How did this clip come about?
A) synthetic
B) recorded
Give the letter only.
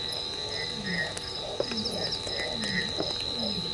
B